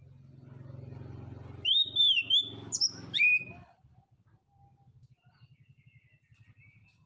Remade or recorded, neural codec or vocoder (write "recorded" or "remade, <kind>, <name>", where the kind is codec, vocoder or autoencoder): recorded